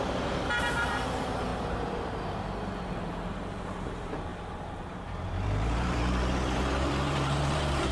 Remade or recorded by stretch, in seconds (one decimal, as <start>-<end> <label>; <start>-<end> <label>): 0.0-7.9 remade